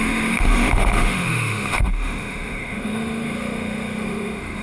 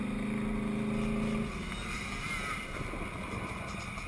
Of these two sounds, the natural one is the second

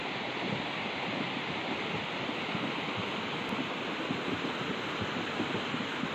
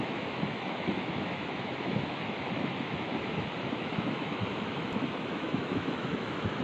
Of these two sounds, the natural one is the first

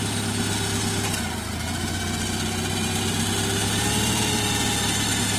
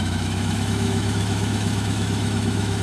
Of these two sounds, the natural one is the first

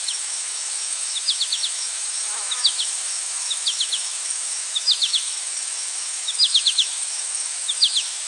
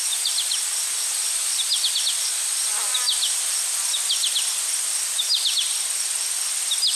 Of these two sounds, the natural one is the second